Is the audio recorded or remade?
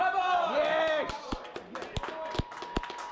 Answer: recorded